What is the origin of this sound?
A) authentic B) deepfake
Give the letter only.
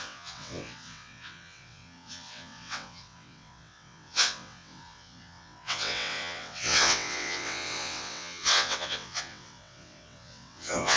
B